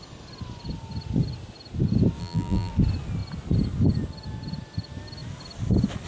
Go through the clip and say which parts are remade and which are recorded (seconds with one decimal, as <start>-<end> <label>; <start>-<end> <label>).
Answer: 0.0-2.2 recorded; 2.2-2.7 remade; 2.7-6.1 recorded